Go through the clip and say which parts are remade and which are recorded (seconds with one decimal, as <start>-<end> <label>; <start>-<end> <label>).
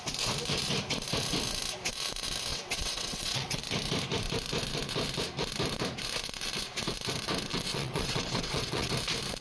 0.0-2.5 recorded; 2.5-3.6 remade; 3.6-7.5 recorded; 7.5-8.9 remade; 8.9-9.4 recorded